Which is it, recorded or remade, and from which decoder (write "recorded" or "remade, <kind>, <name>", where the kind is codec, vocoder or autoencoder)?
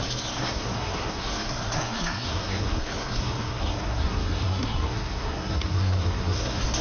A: remade, codec, SNAC